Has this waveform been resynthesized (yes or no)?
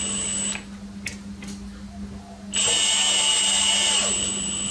no